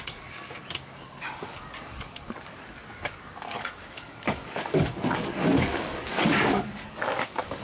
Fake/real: fake